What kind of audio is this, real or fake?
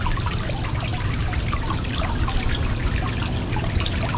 real